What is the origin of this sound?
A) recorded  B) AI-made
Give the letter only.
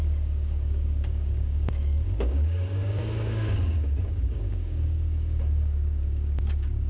B